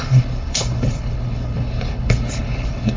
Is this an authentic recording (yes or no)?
no